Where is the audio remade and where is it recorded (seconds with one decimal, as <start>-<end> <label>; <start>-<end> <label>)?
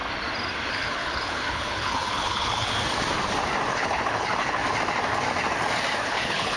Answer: 0.0-0.7 recorded; 0.7-2.7 remade; 2.7-3.7 recorded; 3.7-4.6 remade; 4.6-6.0 recorded; 6.0-6.6 remade